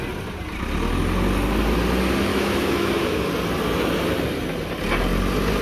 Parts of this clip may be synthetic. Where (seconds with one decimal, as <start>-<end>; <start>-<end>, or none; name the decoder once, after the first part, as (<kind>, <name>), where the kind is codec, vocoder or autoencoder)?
2.3-3.2 (autoencoder, DAC-VAE)